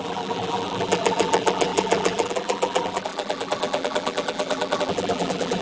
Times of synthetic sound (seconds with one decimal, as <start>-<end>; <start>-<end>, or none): 0.0-5.6